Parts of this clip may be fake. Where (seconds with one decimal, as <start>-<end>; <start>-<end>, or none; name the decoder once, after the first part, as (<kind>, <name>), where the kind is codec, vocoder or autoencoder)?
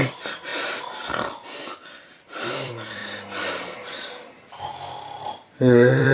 0.0-0.5 (vocoder, BigVGAN v2); 1.7-3.0; 5.2-6.1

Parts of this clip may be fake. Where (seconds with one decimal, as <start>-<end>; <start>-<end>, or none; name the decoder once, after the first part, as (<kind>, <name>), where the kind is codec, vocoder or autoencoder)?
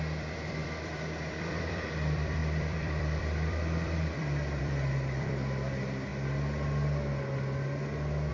0.0-6.1 (vocoder, BigVGAN v2)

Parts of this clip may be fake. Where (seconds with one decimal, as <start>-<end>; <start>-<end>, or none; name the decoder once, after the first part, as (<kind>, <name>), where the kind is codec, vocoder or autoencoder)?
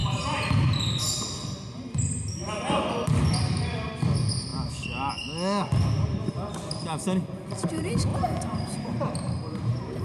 8.1-10.0 (vocoder, BigVGAN v2)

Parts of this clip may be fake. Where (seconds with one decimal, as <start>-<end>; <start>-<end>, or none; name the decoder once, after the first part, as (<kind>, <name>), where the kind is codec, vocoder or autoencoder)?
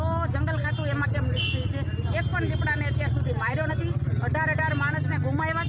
1.0-1.7 (vocoder, BigVGAN v2)